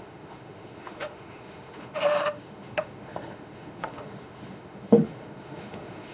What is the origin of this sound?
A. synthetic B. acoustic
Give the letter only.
A